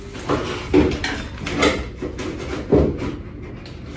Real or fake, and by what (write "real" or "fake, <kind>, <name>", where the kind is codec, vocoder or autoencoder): real